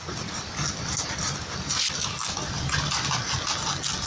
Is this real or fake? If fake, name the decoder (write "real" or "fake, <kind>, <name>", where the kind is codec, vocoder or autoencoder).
real